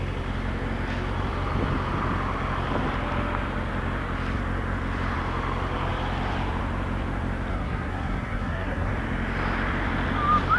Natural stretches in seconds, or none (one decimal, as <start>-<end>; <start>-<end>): 0.0-7.5; 8.9-10.6